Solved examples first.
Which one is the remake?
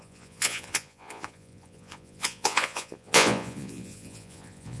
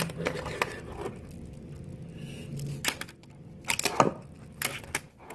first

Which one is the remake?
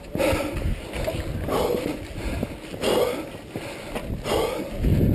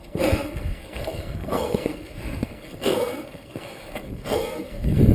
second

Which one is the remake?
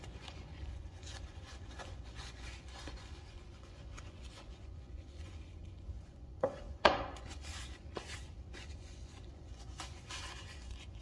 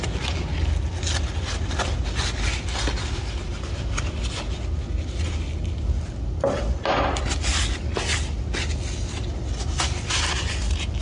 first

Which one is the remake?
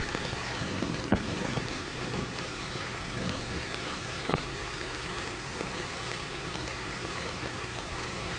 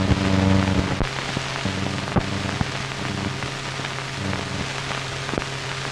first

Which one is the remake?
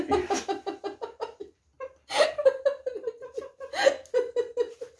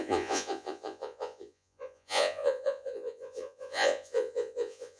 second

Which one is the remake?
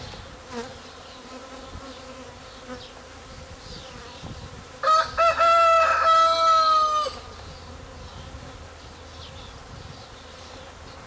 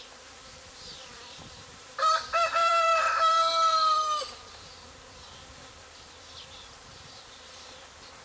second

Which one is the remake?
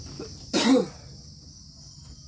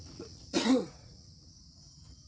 second